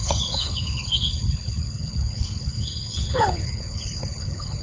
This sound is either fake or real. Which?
fake